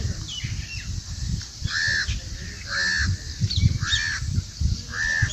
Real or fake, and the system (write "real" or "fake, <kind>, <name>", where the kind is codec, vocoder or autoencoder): real